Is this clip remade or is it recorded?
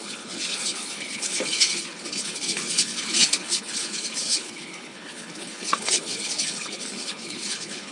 remade